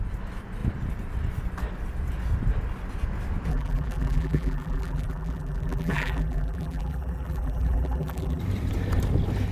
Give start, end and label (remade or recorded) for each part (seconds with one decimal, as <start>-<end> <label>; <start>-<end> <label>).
0.0-3.5 recorded; 3.5-8.4 remade; 8.4-9.5 recorded